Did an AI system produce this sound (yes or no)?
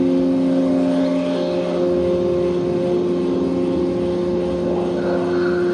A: no